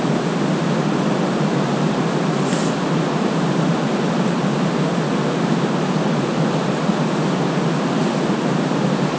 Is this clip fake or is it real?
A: real